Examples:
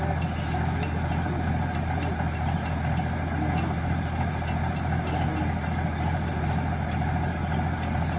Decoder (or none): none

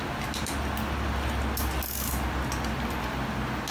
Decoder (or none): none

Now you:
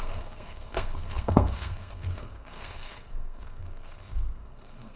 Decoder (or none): codec, SNAC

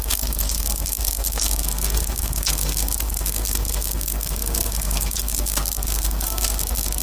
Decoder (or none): codec, SNAC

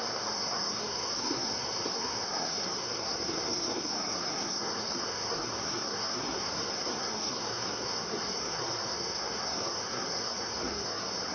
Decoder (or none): codec, SNAC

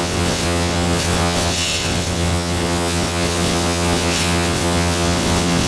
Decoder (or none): vocoder, WaveNeXt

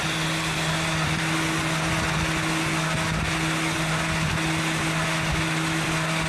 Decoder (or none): none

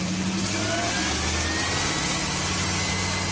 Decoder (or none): none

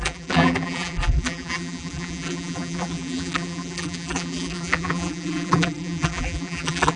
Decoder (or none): vocoder, BigVGAN v2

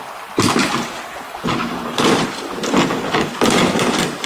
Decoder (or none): none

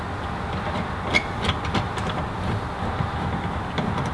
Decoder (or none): none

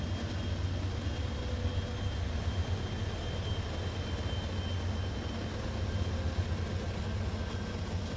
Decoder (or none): none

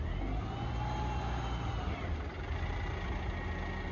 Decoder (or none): none